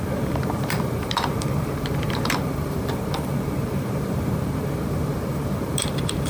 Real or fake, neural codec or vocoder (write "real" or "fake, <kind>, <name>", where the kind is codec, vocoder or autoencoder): fake, vocoder, BigVGAN v2